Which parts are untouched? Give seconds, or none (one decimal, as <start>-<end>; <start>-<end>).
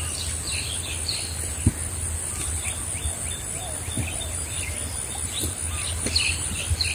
0.0-6.9